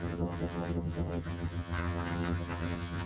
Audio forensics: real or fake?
fake